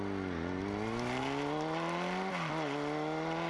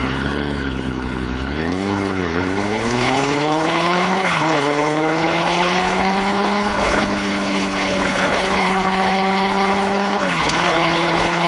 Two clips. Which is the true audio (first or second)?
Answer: first